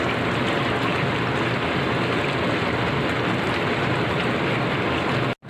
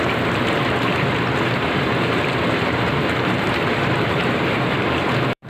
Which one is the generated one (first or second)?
second